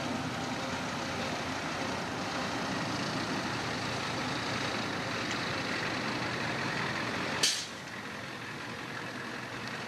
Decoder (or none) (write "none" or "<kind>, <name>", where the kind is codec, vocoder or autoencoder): none